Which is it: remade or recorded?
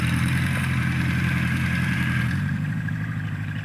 remade